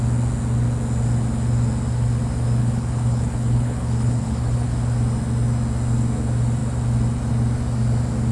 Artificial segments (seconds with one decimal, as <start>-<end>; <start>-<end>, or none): 2.6-4.7